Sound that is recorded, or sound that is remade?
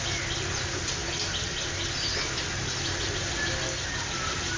recorded